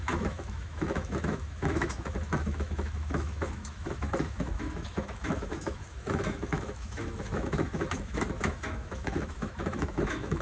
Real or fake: fake